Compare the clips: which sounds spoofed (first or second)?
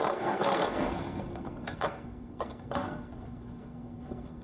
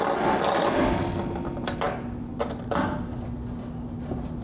first